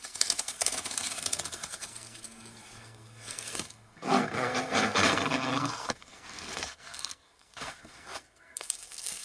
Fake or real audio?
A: fake